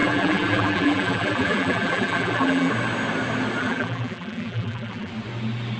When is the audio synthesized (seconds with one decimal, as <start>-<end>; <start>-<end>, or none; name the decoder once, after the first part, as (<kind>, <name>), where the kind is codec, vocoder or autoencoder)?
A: 0.0-2.7 (vocoder, BigVGAN v2); 3.6-5.1